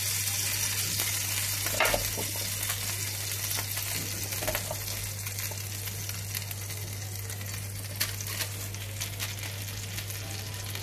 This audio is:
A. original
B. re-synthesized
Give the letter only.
A